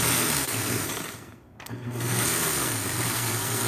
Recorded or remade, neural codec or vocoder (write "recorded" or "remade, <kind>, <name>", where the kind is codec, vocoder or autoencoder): remade, codec, SNAC